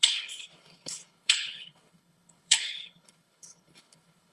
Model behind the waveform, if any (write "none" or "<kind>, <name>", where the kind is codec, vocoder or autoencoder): codec, HILCodec